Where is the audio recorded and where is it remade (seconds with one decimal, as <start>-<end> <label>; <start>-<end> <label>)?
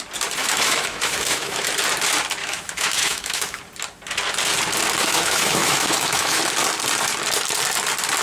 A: 0.0-0.4 recorded; 0.4-1.7 remade; 1.7-2.4 recorded; 2.4-3.6 remade; 3.6-5.0 recorded; 5.0-6.4 remade; 6.4-8.2 recorded